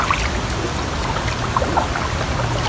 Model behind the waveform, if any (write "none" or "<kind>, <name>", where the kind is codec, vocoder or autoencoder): none